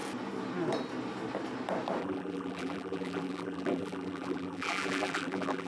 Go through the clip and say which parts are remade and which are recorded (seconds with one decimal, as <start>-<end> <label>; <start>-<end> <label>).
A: 0.0-2.0 recorded; 2.0-5.7 remade